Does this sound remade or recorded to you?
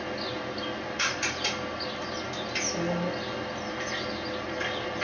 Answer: recorded